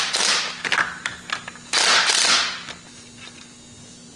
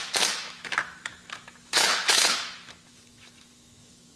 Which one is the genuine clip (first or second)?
first